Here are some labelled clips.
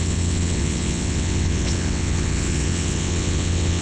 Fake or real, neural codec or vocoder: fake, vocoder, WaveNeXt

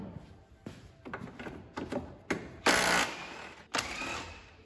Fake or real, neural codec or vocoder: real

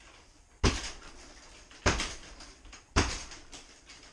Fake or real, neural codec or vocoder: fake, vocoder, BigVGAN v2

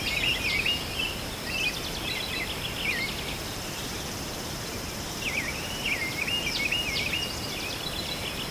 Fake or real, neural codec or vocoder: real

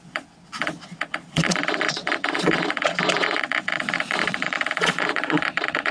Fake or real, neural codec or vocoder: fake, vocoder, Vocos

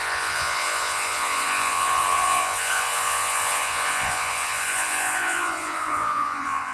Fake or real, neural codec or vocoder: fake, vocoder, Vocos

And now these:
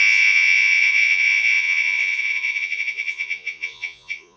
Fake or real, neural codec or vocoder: fake, vocoder, Vocos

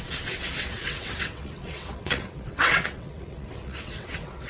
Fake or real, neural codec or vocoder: fake, vocoder, WaveNeXt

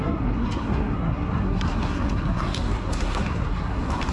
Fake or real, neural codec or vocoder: fake, codec, SNAC